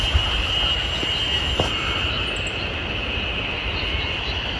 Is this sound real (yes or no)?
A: yes